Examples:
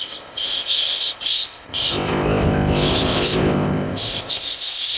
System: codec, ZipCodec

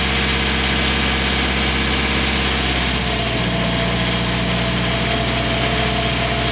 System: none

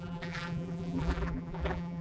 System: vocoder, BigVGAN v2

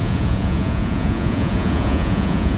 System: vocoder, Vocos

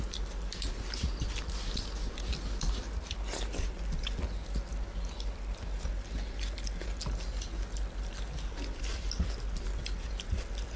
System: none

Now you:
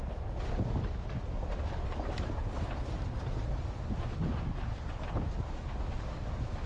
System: none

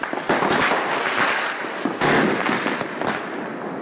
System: none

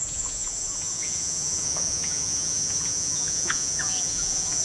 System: vocoder, Vocos